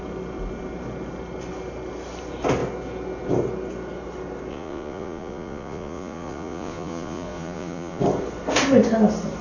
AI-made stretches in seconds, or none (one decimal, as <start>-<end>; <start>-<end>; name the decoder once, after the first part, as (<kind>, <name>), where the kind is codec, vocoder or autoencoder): 4.5-8.0 (vocoder, Vocos)